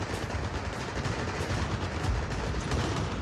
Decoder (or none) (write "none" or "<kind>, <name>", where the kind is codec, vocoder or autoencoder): none